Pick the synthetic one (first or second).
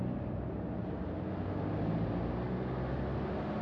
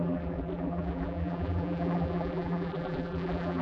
second